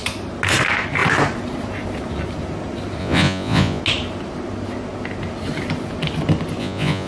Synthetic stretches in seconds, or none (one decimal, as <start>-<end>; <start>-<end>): 3.0-3.8; 6.6-7.1